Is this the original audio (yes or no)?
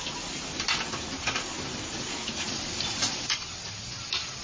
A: yes